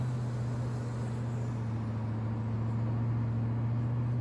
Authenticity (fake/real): real